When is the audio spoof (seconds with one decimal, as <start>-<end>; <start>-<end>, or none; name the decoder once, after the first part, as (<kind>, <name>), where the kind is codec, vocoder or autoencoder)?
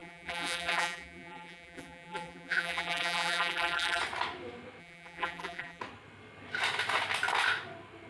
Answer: 0.0-4.0 (vocoder, BigVGAN v2); 4.8-5.8